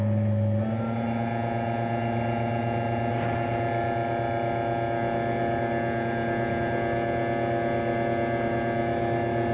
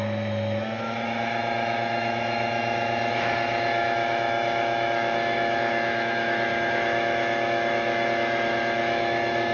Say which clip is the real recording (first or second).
first